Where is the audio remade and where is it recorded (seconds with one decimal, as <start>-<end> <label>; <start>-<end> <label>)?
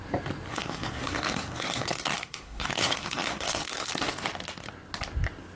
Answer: 0.0-0.5 recorded; 0.5-3.9 remade; 3.9-5.6 recorded